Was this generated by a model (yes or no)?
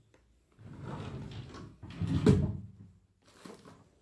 no